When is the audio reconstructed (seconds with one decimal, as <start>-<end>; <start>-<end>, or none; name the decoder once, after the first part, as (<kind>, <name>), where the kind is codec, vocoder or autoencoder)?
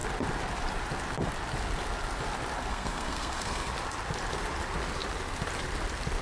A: 2.7-3.7 (codec, SNAC)